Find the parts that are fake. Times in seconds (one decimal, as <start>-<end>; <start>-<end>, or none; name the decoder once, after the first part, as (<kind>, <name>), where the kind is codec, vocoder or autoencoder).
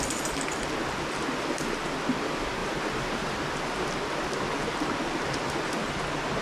2.6-3.2 (vocoder, BigVGAN v2)